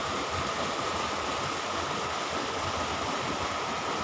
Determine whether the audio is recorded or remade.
recorded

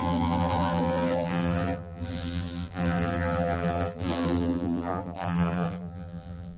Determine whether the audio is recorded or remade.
remade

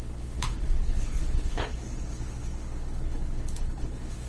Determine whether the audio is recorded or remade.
remade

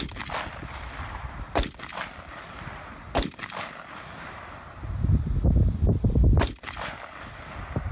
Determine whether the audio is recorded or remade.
recorded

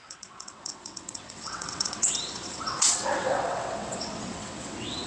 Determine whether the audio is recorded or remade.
remade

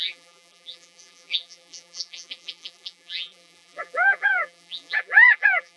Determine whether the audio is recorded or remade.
remade